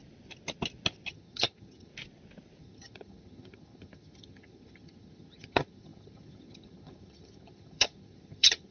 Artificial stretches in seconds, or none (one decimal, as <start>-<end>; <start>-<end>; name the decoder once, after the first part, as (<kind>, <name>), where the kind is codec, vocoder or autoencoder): 1.1-1.9 (vocoder, HiFi-GAN); 2.6-8.7